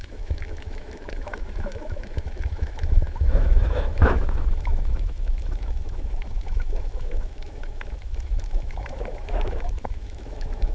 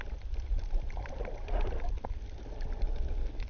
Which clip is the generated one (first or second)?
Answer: first